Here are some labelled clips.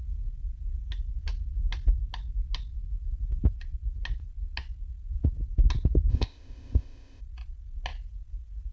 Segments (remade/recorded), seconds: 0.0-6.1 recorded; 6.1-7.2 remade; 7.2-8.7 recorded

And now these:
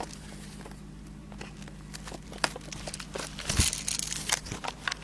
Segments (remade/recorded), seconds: 0.0-5.0 recorded

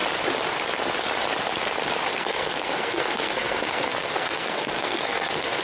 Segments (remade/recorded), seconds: 0.0-2.1 recorded; 2.1-5.6 remade

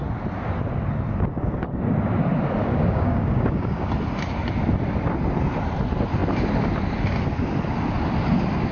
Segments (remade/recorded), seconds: 0.0-2.6 recorded; 2.6-3.9 remade; 3.9-8.7 recorded

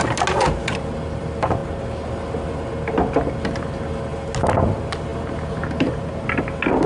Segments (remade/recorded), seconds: 0.0-6.9 recorded